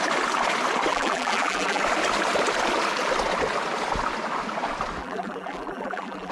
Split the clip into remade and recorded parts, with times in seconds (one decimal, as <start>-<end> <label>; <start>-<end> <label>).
0.0-0.9 recorded; 0.9-1.8 remade; 1.8-5.0 recorded; 5.0-6.3 remade